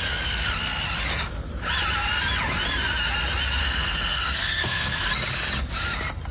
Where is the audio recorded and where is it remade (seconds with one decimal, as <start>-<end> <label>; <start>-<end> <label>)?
0.0-3.6 recorded; 3.6-5.1 remade; 5.1-6.3 recorded